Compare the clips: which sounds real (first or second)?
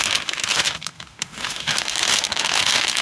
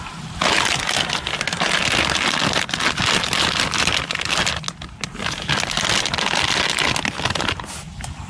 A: second